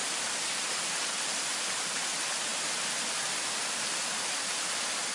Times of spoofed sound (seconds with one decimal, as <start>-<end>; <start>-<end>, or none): 1.2-2.5; 3.5-5.1